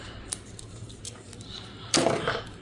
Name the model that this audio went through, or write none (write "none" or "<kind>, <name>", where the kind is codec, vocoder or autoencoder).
none